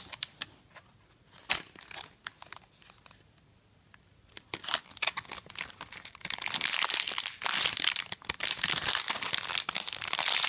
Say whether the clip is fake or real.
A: real